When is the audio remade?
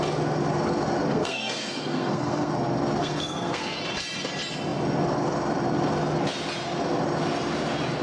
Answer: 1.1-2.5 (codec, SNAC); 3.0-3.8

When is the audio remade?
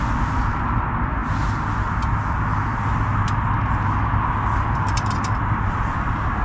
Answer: none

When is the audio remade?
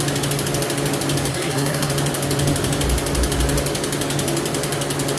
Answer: 1.3-1.9 (codec, SNAC)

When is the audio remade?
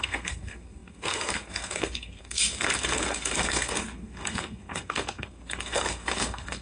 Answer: 0.0-6.6 (codec, SNAC)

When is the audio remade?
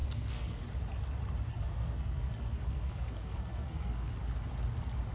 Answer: 0.0-0.6 (codec, SNAC); 1.5-4.1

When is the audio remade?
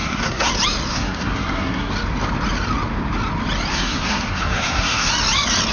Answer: 0.0-0.5 (codec, SNAC); 0.9-1.9; 3.7-5.1